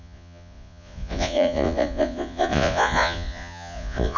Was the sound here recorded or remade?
remade